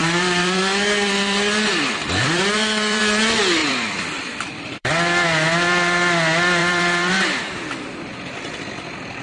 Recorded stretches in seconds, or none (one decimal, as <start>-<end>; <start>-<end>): 3.0-3.6; 4.9-6.6; 7.1-9.2